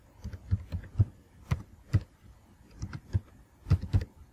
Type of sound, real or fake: real